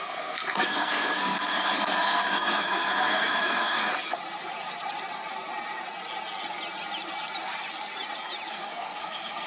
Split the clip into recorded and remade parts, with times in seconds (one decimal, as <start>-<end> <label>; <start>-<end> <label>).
0.0-3.9 remade; 3.9-8.5 recorded; 8.5-9.5 remade